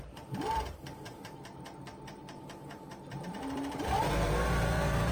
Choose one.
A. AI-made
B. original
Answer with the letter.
A